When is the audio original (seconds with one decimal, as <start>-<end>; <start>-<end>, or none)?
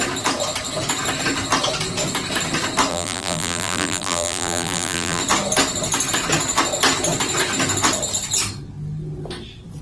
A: 0.0-2.9; 5.2-9.8